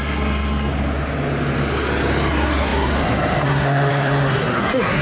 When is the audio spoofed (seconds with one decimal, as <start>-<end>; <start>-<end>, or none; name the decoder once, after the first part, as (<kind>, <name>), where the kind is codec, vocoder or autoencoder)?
0.0-0.7 (codec, SNAC); 2.3-5.0